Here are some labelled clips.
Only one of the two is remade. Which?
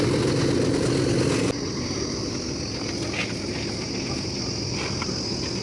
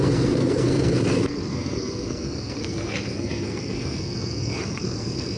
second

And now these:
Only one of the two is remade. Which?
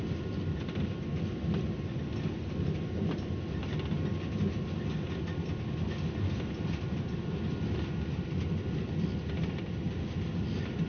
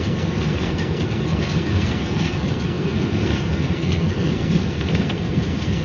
second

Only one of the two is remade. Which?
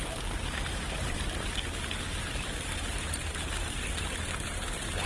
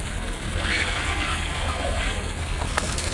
second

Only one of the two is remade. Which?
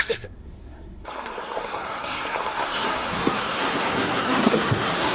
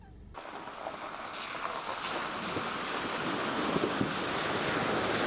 first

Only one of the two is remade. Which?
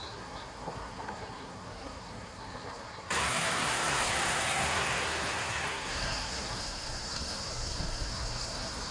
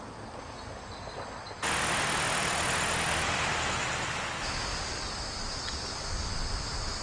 first